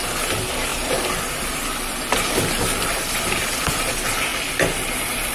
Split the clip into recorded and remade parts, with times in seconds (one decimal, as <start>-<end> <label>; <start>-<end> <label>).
0.0-5.3 recorded